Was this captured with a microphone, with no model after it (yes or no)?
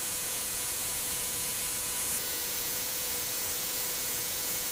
no